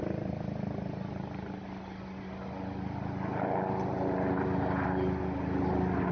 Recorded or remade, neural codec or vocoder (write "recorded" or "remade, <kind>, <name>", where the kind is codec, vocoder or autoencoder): recorded